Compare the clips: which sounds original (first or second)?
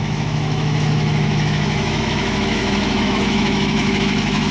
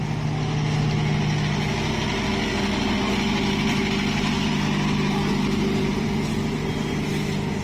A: second